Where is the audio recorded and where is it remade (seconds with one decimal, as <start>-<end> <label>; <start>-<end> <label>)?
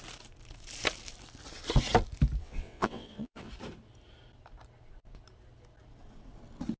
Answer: 0.0-2.4 recorded; 2.4-3.5 remade; 3.5-6.8 recorded